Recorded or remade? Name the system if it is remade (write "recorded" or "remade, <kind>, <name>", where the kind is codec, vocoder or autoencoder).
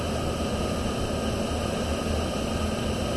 recorded